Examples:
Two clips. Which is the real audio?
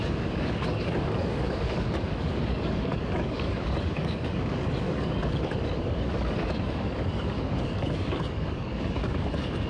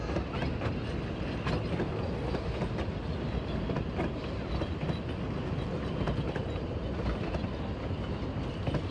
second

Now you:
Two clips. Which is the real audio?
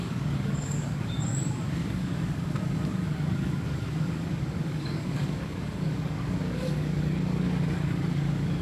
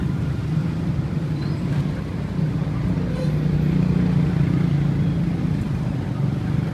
second